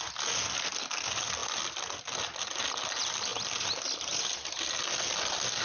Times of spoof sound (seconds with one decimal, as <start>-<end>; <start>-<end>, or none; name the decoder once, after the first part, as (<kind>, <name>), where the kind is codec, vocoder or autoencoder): none